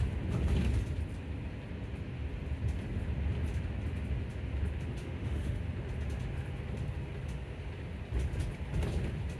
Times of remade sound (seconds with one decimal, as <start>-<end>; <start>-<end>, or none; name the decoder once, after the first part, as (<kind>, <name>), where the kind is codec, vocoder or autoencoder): 5.0-5.6 (autoencoder, DAC-VAE)